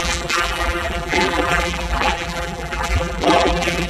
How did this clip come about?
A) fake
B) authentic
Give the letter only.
A